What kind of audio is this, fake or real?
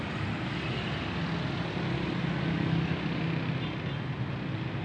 real